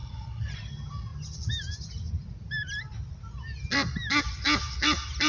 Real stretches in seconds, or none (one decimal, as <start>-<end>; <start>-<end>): 0.5-5.3